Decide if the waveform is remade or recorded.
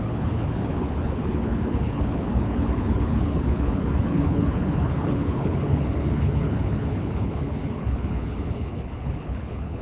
remade